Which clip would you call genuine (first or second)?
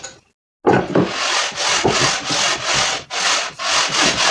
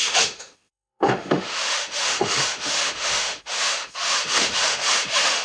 first